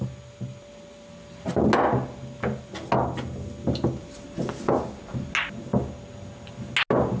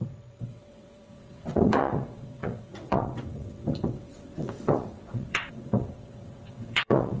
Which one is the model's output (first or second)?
second